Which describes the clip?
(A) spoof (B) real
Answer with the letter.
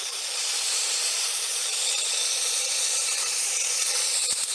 A